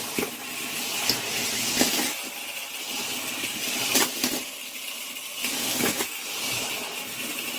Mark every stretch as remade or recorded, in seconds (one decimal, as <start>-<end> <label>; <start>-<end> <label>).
0.0-7.6 recorded

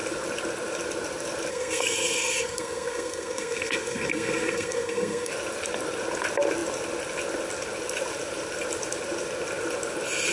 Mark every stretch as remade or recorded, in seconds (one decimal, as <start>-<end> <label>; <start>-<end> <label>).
0.0-1.5 recorded; 1.5-5.3 remade; 5.3-10.3 recorded

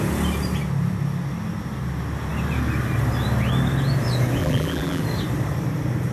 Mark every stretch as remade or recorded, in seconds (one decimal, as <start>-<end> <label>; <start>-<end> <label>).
0.0-4.4 recorded; 4.4-5.0 remade; 5.0-6.1 recorded